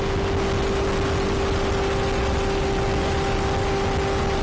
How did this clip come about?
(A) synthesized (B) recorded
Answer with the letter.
B